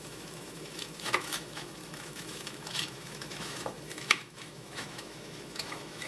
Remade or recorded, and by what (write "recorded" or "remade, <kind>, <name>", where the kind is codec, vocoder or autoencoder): remade, autoencoder, DAC-VAE